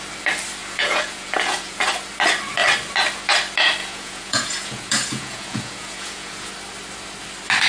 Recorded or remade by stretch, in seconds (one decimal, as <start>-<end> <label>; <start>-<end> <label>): 0.0-0.6 recorded; 0.6-1.8 remade; 1.8-3.8 recorded; 3.8-6.5 remade; 6.5-7.7 recorded